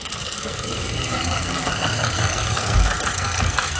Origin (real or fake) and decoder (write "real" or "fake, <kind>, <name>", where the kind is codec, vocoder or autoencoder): fake, codec, SNAC